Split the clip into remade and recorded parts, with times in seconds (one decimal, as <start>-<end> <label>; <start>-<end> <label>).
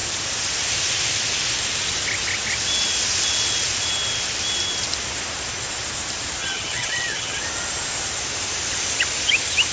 0.0-6.4 recorded; 6.4-7.4 remade; 7.4-9.7 recorded